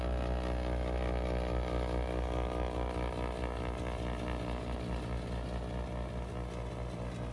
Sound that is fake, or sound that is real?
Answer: real